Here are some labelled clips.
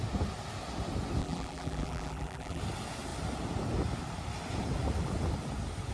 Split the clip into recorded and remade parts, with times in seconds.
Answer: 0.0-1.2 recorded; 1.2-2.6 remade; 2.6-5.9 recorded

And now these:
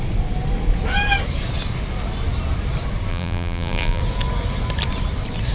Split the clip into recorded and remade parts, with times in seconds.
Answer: 0.0-3.1 recorded; 3.1-4.0 remade; 4.0-5.5 recorded

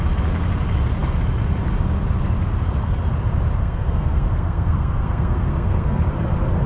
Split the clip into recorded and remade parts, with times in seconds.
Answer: 0.0-3.6 recorded; 3.6-6.0 remade; 6.0-6.7 recorded